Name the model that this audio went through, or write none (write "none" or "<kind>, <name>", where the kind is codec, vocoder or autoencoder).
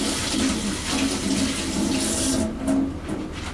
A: none